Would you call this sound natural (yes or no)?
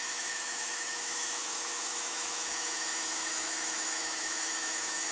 no